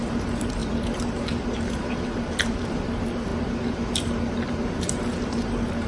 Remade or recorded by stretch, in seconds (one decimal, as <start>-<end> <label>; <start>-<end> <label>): 0.0-3.3 remade; 3.3-4.5 recorded; 4.5-5.9 remade